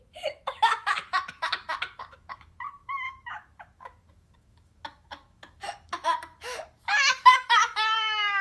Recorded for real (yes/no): no